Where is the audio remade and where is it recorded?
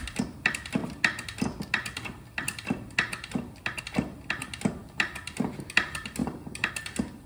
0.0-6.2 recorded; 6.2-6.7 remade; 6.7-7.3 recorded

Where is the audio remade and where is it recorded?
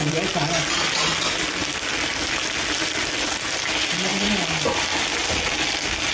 0.0-6.1 recorded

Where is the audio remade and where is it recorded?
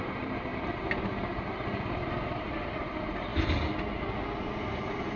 0.0-3.3 remade; 3.3-4.7 recorded; 4.7-5.2 remade